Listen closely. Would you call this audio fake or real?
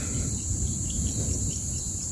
fake